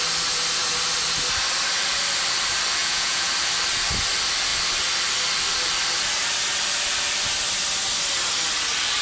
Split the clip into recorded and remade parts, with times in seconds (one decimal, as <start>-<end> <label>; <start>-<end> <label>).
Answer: 0.0-2.8 recorded; 2.8-3.3 remade; 3.3-9.0 recorded